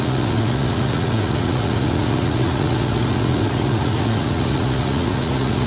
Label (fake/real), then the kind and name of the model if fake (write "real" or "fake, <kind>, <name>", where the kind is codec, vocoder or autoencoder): fake, vocoder, Vocos